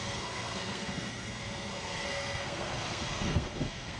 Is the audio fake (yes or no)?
yes